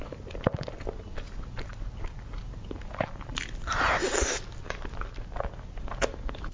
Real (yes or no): yes